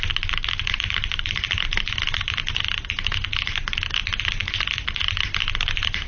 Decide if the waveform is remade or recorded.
recorded